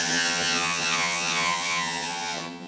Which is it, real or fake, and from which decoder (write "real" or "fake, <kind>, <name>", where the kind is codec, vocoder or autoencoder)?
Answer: fake, vocoder, HiFi-GAN